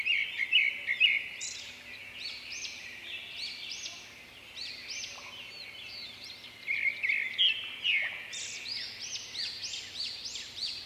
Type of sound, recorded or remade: recorded